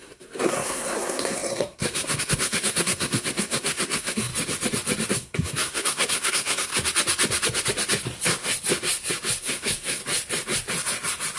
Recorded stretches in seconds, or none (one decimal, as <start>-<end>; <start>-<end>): 4.3-5.1; 6.7-9.4; 10.0-11.4